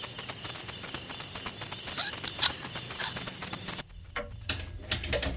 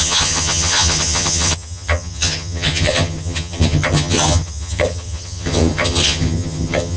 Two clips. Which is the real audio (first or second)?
first